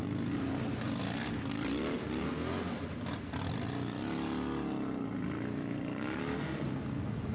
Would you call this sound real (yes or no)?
yes